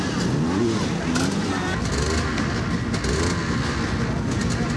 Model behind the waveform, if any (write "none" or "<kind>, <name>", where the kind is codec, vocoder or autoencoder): none